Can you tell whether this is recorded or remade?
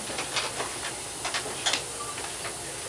recorded